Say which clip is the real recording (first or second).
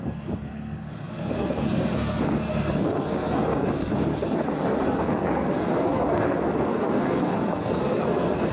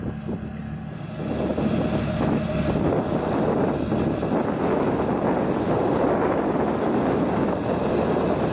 second